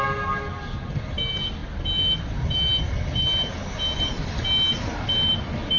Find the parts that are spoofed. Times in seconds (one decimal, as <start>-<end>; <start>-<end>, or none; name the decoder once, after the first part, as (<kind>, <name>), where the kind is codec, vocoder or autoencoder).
none